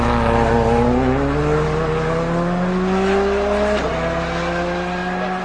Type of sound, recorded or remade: recorded